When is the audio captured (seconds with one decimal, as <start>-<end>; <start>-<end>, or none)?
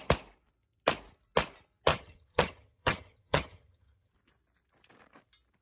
0.0-1.9; 4.1-5.6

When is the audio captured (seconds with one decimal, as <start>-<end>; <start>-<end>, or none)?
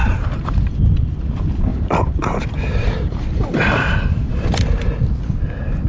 0.8-1.7; 4.3-5.9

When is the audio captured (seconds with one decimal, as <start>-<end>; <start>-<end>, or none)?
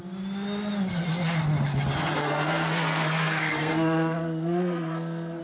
0.0-2.2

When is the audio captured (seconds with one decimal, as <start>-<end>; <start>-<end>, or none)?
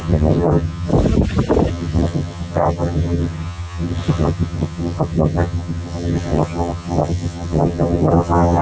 0.9-1.7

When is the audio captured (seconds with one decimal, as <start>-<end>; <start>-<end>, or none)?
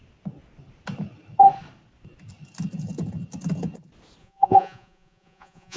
0.0-4.2